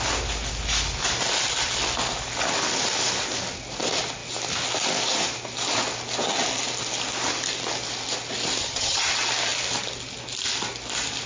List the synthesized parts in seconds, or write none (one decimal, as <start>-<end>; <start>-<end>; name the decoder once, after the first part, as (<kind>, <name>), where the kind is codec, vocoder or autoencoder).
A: 8.6-9.1 (vocoder, HiFi-GAN)

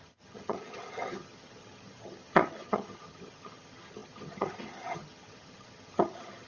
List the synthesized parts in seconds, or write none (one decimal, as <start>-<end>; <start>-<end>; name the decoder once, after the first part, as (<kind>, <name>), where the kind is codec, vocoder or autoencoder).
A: 0.0-6.5 (vocoder, HiFi-GAN)

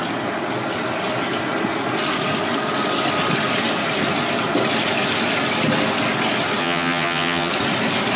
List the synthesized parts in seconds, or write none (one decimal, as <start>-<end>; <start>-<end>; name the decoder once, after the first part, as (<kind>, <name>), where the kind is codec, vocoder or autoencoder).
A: 6.6-7.5 (vocoder, HiFi-GAN)

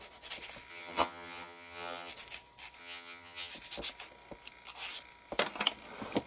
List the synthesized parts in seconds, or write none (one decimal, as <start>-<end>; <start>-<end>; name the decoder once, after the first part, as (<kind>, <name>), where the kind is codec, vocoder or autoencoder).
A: 0.7-2.1 (vocoder, HiFi-GAN); 2.8-3.5

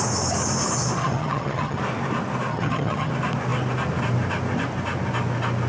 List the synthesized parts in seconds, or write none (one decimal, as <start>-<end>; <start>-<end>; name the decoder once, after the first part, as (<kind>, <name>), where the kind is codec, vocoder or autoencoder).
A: 1.0-1.8 (vocoder, HiFi-GAN); 2.5-3.1

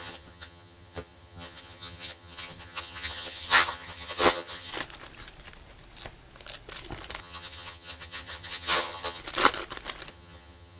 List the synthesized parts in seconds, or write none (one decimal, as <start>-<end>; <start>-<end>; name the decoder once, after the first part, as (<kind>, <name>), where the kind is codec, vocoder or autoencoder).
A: 0.0-4.7 (vocoder, HiFi-GAN); 7.2-9.2; 10.1-10.8